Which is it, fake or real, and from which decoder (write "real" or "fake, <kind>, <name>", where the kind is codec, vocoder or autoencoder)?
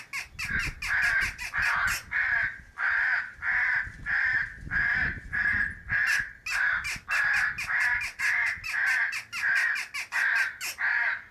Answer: real